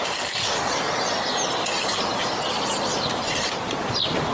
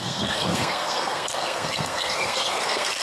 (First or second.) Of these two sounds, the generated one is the second